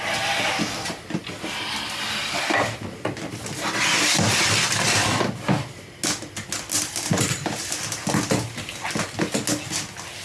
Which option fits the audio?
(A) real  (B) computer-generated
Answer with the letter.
A